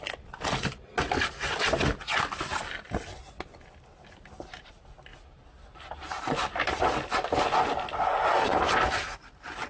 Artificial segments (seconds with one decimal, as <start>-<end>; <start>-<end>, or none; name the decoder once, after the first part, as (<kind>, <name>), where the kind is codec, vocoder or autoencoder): none